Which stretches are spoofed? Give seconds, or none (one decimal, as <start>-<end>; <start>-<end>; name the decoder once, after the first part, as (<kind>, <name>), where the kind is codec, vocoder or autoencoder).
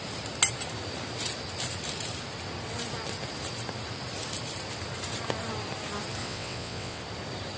6.2-7.0 (vocoder, WaveNeXt)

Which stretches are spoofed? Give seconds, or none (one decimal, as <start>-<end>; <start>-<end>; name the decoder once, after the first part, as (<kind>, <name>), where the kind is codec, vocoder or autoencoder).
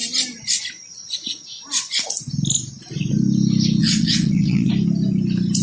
3.8-4.7 (vocoder, WaveNeXt)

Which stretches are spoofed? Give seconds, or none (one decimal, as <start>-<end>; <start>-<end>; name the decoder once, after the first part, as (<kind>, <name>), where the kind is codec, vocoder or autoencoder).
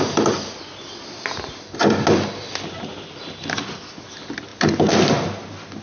none